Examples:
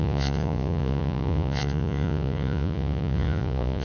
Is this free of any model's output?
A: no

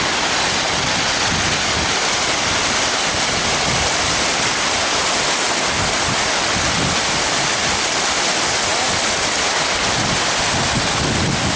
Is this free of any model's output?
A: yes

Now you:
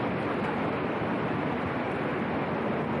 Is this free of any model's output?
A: yes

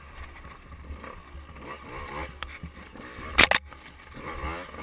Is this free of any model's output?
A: yes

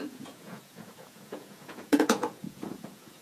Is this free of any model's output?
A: no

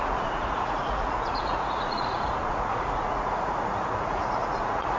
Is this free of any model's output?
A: no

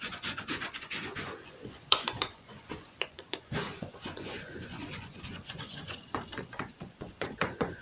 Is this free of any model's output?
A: no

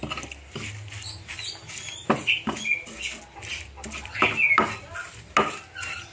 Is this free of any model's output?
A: yes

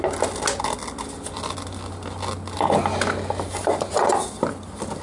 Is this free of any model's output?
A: yes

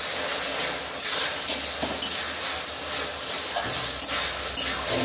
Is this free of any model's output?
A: yes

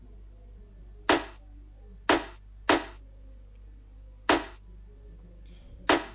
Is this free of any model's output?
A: yes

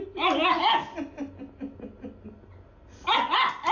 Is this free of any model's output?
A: yes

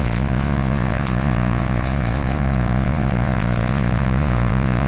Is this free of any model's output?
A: no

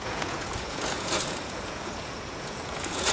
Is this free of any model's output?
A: no